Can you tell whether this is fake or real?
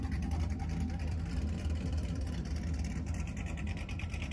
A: fake